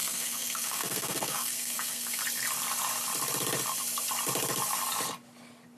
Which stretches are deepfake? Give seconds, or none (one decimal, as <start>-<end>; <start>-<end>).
0.0-2.2